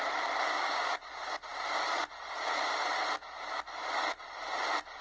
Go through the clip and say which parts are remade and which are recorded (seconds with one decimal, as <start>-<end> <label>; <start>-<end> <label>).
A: 0.0-0.5 recorded; 0.5-1.1 remade; 1.1-5.0 recorded